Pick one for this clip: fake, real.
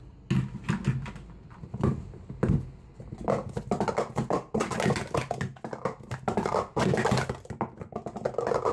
real